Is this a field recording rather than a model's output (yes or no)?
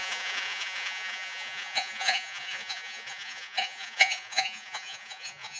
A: no